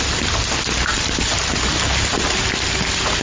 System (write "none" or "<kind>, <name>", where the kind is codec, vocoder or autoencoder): none